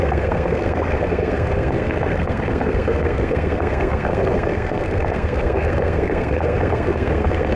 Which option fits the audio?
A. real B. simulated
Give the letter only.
B